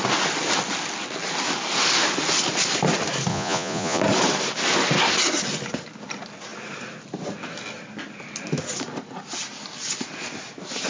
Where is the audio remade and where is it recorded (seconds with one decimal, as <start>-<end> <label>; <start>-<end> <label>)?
0.0-3.3 recorded; 3.3-4.0 remade; 4.0-10.9 recorded